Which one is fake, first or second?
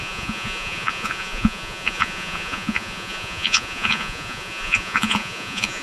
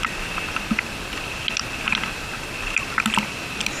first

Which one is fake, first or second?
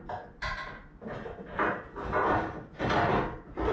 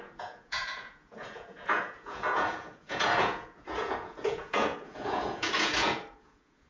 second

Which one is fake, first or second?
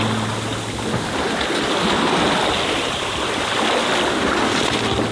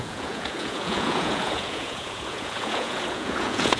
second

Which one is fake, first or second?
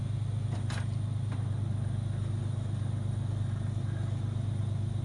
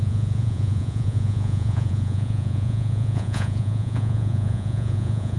second